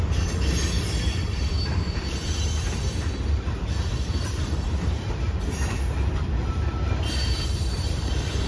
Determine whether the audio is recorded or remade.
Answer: remade